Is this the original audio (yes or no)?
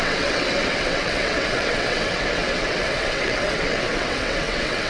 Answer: no